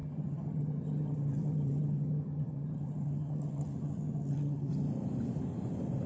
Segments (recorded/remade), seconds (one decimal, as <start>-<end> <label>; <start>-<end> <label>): 0.0-4.7 remade; 4.7-6.1 recorded